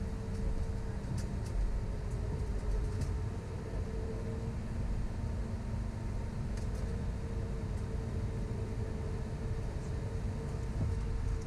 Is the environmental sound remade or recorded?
recorded